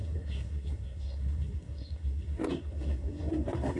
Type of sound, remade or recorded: remade